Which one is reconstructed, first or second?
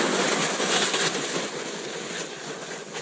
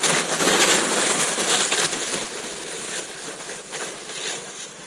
first